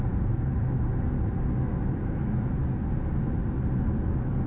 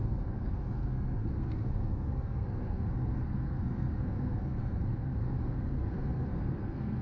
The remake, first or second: second